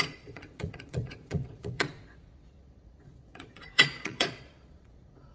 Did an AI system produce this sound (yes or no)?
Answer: yes